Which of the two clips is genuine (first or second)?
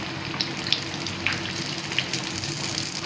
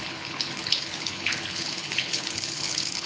first